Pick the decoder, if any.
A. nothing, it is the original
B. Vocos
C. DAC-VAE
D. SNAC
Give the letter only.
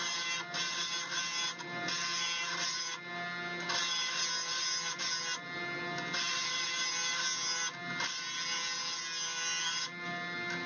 A